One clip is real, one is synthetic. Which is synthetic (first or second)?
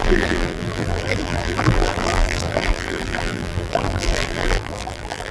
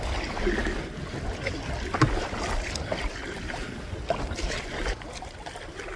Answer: first